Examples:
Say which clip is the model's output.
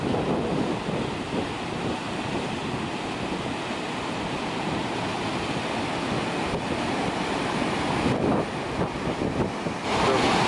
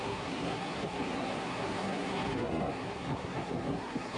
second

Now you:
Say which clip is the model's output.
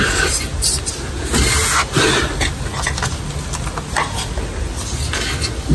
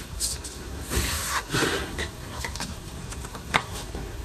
second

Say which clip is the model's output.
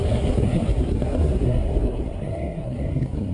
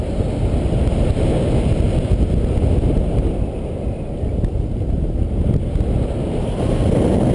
first